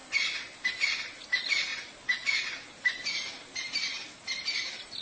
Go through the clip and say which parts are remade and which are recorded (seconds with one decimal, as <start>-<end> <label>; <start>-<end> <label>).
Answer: 0.0-1.7 recorded; 1.7-5.0 remade